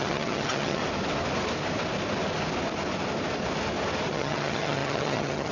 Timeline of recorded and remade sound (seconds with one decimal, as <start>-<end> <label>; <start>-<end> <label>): 0.0-0.8 remade; 0.8-4.1 recorded; 4.1-5.5 remade